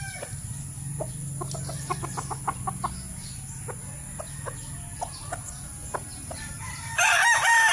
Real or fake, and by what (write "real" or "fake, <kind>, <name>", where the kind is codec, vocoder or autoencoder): real